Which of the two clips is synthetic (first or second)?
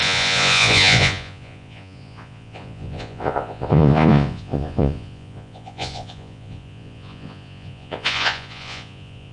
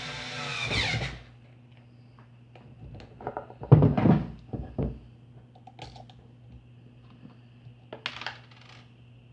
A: first